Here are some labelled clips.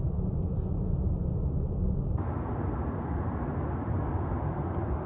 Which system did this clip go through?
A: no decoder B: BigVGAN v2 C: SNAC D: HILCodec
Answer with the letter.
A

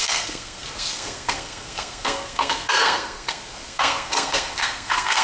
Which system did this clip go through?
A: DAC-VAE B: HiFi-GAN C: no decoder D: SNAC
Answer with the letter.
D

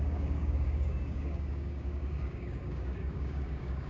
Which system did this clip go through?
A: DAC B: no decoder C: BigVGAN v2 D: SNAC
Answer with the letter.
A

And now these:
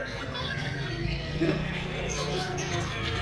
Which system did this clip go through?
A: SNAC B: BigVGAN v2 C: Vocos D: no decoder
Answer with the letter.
A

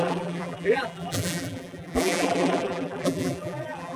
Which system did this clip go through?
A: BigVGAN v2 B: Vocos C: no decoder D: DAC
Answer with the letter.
A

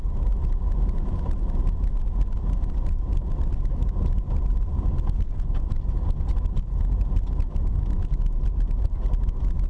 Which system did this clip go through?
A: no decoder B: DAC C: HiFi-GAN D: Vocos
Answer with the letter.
A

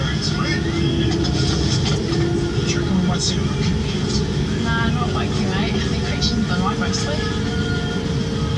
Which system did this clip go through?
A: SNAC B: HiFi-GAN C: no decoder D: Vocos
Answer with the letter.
C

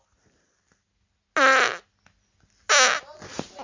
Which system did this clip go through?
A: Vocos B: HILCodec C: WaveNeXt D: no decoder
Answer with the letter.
D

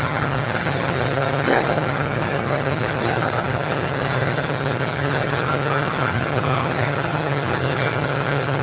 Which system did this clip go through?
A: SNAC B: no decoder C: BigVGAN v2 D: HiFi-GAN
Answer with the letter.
D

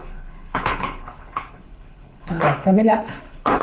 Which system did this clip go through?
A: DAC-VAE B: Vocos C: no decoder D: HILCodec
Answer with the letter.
D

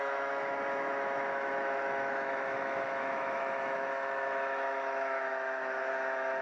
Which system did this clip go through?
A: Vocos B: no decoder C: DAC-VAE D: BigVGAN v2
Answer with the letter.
C